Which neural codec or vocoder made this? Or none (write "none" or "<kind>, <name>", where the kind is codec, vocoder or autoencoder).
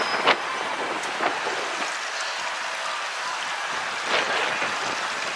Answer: none